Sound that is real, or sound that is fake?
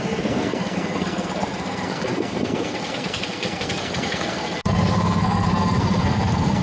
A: fake